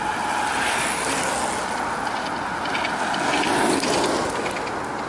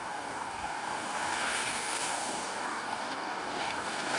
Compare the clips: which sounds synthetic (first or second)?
second